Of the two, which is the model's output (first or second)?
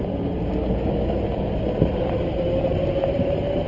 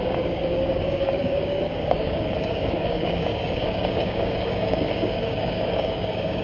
second